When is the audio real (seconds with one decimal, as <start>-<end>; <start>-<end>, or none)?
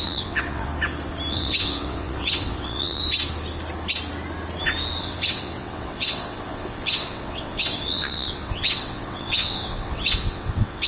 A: 0.7-1.3; 3.0-5.0